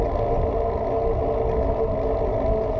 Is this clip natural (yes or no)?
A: yes